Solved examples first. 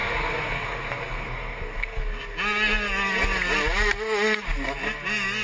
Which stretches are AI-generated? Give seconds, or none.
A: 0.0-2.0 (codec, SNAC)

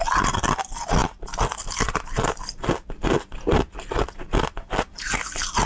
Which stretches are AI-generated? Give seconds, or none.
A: none

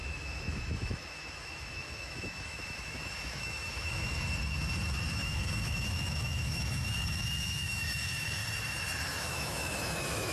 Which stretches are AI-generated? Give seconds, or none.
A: 0.0-4.1 (autoencoder, DAC-VAE); 5.1-8.4; 9.0-10.3

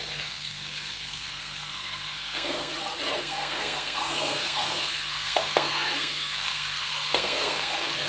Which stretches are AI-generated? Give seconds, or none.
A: 0.0-2.7 (codec, SNAC); 3.2-8.1